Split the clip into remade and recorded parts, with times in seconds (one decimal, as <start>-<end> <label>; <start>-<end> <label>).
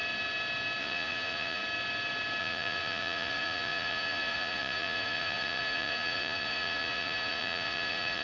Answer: 0.0-0.8 recorded; 0.8-1.6 remade; 1.6-2.4 recorded; 2.4-8.2 remade